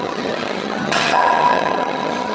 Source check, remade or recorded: remade